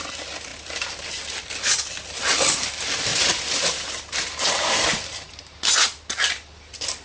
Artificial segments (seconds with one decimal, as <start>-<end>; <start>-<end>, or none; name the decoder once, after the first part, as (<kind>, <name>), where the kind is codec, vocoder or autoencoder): 3.1-5.4 (vocoder, BigVGAN v2)